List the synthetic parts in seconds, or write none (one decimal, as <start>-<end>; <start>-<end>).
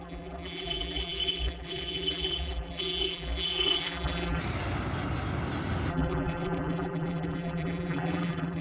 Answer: 0.0-4.4; 5.9-8.6